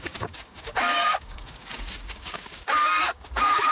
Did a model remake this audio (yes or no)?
yes